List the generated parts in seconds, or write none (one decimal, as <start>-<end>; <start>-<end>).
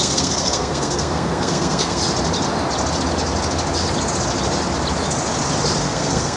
0.0-2.0; 5.8-6.4